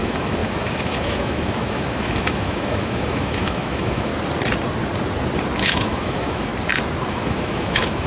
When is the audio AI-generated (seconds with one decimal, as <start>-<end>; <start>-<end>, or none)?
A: 0.0-4.1; 5.6-6.5; 7.1-8.1